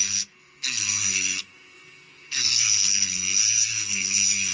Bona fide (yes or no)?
no